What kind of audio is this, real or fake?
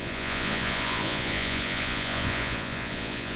fake